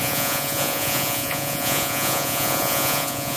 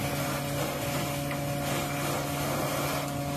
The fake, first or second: first